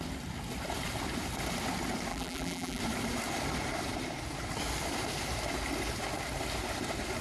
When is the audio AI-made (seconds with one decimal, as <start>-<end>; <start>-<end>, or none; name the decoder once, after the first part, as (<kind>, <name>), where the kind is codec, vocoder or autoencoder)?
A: 2.1-2.8 (vocoder, BigVGAN v2)